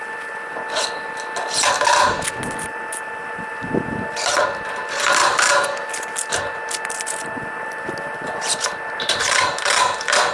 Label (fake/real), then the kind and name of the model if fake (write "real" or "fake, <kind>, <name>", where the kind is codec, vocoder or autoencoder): real